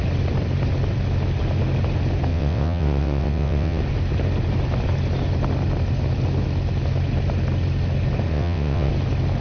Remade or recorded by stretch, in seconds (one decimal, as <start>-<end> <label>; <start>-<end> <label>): 0.0-2.3 recorded; 2.3-3.8 remade; 3.8-8.3 recorded; 8.3-8.9 remade; 8.9-9.4 recorded